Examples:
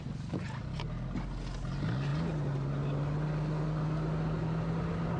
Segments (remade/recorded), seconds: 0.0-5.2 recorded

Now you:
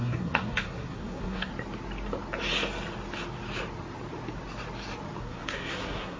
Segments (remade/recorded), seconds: 0.0-1.5 remade; 1.5-5.2 recorded; 5.2-6.2 remade

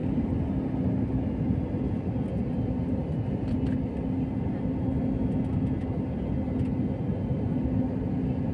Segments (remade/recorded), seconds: 0.0-8.5 recorded

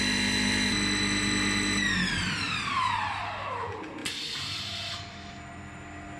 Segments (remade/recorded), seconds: 0.0-6.2 recorded

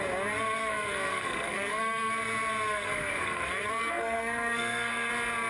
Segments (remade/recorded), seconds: 0.0-0.6 recorded; 0.6-2.1 remade; 2.1-2.7 recorded; 2.7-5.1 remade; 5.1-5.5 recorded

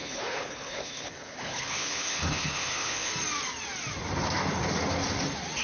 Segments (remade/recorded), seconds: 0.0-3.1 remade; 3.1-5.6 recorded

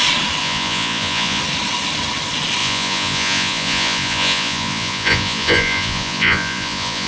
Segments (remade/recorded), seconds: 0.0-0.4 recorded; 0.4-1.4 remade; 1.4-2.6 recorded; 2.6-7.1 remade

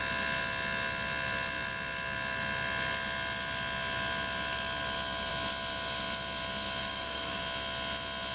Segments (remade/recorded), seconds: 0.0-6.8 recorded; 6.8-7.4 remade; 7.4-8.3 recorded